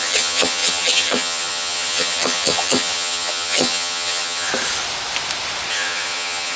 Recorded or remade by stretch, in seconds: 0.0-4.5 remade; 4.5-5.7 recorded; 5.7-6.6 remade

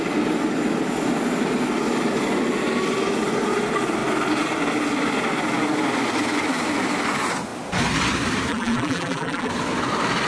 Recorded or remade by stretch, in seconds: 0.0-8.5 recorded; 8.5-9.5 remade; 9.5-10.3 recorded